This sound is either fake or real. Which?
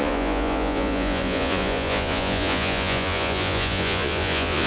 fake